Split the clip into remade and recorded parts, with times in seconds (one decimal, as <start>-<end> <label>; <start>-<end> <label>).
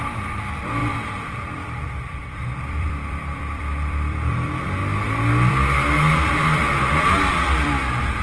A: 0.0-4.8 remade; 4.8-5.5 recorded; 5.5-8.2 remade